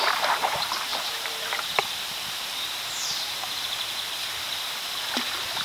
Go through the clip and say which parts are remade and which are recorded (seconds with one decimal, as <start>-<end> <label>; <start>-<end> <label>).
0.0-4.5 remade; 4.5-5.6 recorded